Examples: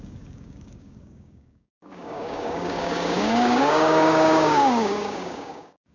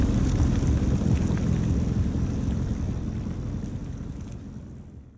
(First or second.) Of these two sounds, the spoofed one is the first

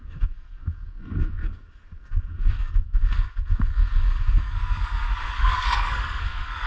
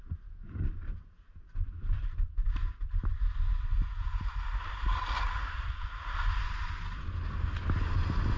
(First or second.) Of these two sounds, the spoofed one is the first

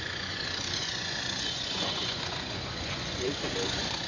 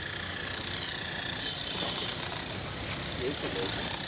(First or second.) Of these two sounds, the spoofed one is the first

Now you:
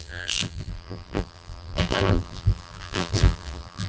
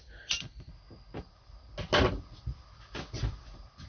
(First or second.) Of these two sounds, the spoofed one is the first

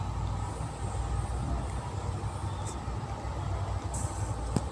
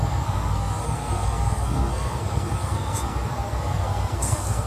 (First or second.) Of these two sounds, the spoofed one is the second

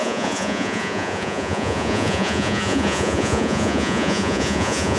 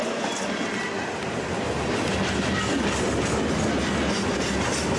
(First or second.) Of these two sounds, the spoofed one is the first